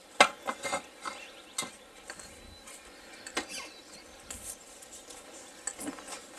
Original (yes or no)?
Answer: yes